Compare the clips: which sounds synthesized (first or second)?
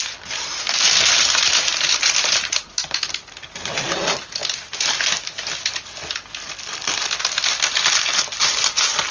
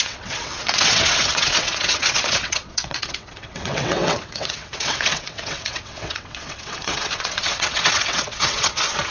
second